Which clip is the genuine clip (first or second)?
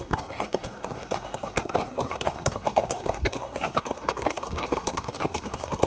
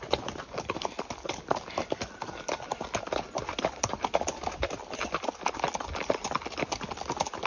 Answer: second